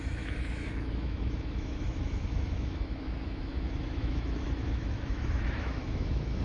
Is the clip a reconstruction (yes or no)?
yes